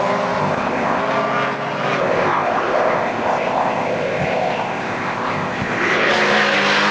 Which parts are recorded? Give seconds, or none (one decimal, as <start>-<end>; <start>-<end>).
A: 0.0-0.4; 1.0-2.0; 6.1-6.9